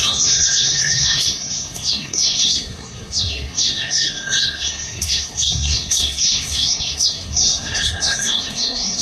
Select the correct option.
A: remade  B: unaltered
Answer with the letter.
A